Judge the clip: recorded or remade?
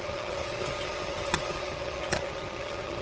remade